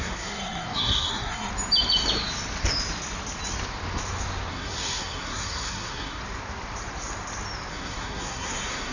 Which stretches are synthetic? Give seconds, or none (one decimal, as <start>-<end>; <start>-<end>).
0.0-1.5; 4.5-6.2; 7.7-8.9